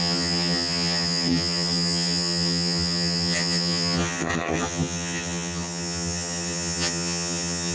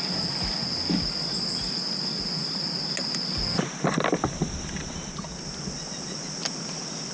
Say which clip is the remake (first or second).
first